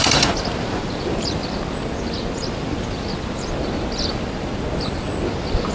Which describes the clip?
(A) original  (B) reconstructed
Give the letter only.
A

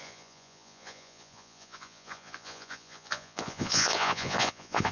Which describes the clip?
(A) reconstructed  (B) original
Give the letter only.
A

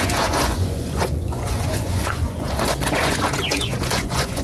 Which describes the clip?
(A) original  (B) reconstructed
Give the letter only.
B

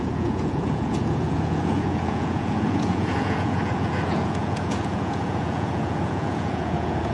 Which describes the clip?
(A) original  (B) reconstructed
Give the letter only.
B